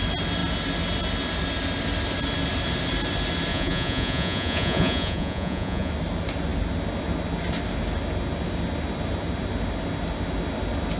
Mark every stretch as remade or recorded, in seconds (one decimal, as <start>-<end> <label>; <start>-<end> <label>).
0.0-3.5 recorded; 3.5-5.9 remade; 5.9-11.0 recorded